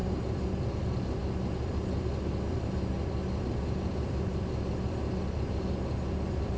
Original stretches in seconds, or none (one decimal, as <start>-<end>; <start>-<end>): 0.0-6.6